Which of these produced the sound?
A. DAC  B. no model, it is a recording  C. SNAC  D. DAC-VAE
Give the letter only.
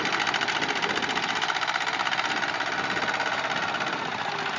B